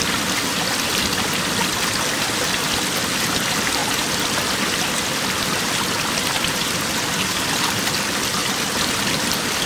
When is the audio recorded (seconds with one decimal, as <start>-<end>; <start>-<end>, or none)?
0.0-9.7

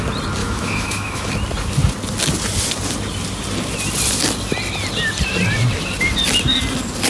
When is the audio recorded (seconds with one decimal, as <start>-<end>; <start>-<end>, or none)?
0.0-0.4; 1.3-7.1

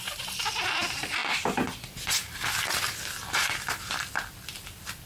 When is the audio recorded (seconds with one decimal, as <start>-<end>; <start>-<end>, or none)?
0.0-5.1